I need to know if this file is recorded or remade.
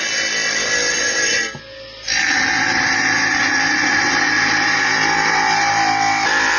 recorded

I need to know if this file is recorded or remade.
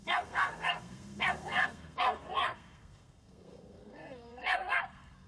remade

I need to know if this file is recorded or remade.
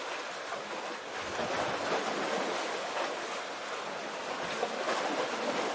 recorded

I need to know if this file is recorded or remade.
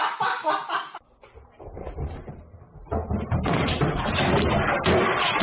recorded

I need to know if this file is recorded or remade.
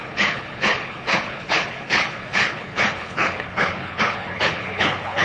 remade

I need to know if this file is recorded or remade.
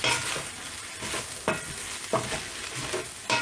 recorded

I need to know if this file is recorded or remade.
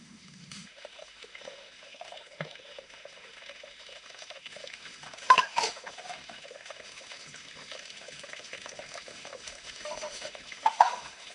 remade